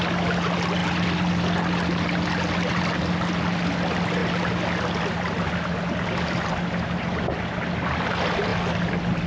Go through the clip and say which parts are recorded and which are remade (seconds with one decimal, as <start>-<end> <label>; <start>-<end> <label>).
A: 0.0-9.3 recorded